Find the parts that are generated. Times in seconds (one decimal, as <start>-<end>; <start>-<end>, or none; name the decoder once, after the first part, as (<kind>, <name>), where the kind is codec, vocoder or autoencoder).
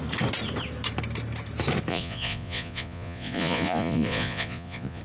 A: 1.9-5.0 (vocoder, Vocos)